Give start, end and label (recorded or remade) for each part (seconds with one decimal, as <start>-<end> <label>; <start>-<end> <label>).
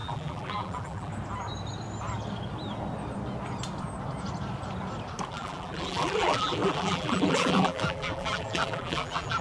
0.0-1.1 remade; 1.1-5.3 recorded; 5.3-9.4 remade